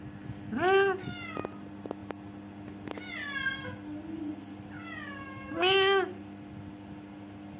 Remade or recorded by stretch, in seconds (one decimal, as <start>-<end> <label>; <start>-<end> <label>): 0.0-7.6 recorded